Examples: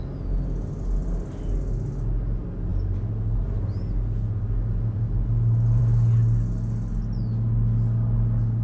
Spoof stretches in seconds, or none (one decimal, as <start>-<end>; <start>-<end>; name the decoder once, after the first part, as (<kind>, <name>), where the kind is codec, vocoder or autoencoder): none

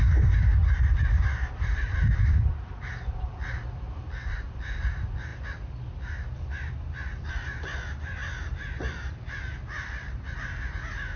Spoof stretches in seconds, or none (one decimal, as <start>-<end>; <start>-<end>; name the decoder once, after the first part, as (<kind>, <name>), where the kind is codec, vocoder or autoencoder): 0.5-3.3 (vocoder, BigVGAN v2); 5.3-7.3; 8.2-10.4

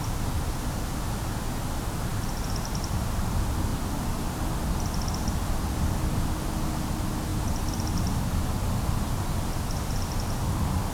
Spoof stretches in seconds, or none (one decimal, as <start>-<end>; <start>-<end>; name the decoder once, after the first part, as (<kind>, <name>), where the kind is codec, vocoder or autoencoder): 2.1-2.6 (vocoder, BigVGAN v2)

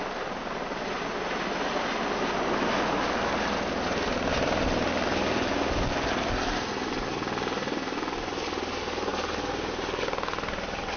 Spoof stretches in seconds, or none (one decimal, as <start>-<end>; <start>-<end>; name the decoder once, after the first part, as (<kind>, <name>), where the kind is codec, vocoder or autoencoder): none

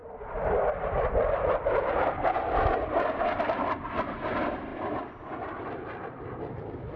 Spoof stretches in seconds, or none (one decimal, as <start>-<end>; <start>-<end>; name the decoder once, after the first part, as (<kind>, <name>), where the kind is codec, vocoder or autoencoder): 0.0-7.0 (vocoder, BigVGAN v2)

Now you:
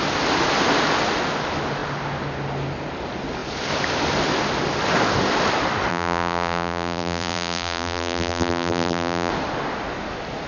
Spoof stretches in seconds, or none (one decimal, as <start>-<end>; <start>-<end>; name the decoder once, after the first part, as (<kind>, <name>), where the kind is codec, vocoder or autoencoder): 5.9-9.3 (vocoder, BigVGAN v2)